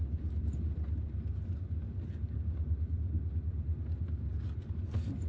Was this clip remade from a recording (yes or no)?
no